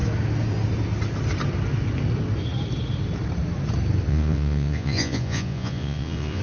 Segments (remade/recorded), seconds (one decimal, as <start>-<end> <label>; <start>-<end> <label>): 0.0-4.1 recorded; 4.1-6.4 remade